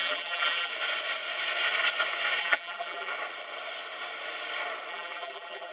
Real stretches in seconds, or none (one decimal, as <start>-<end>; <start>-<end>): 0.7-2.4; 3.1-4.9